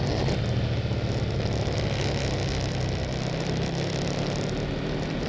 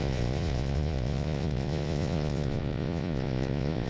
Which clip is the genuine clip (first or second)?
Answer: first